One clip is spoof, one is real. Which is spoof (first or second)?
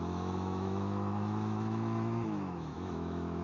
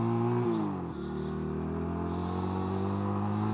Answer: first